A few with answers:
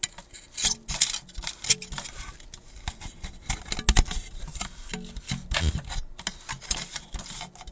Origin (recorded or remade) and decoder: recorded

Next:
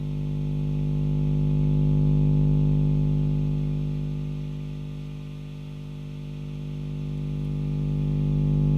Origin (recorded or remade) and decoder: recorded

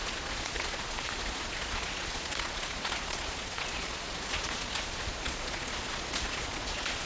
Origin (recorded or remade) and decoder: remade, vocoder, Vocos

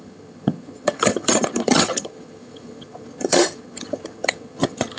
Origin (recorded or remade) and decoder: remade, vocoder, HiFi-GAN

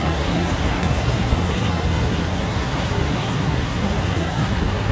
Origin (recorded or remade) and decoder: remade, codec, SNAC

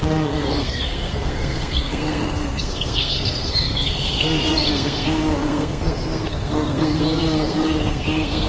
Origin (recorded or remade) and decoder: remade, codec, SNAC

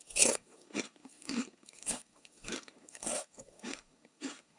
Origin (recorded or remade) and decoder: remade, codec, SNAC